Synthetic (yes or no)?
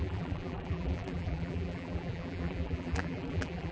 yes